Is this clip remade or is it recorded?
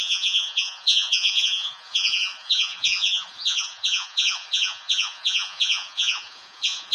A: remade